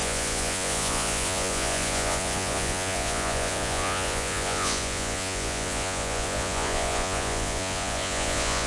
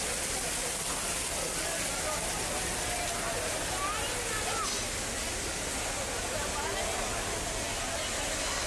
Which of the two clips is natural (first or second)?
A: second